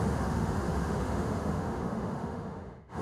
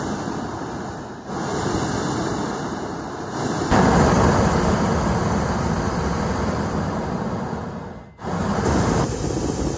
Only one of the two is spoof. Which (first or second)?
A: first